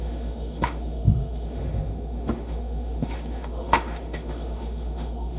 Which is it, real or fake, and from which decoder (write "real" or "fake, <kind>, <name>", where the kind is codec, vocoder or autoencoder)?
fake, autoencoder, DAC-VAE